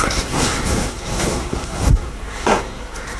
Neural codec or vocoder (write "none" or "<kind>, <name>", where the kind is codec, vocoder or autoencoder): codec, SNAC